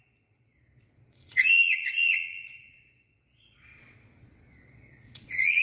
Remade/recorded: remade